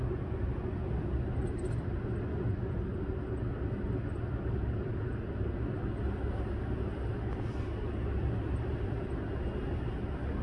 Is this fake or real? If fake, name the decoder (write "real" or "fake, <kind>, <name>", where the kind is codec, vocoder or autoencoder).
real